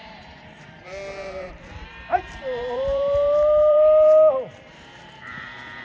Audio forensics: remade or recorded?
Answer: remade